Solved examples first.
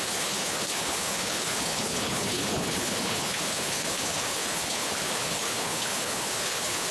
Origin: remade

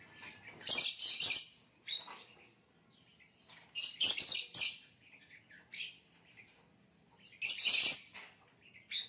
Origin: recorded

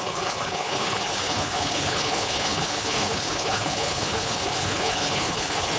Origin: remade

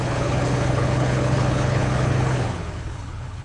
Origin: remade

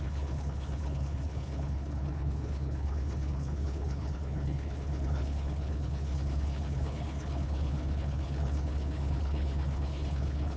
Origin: remade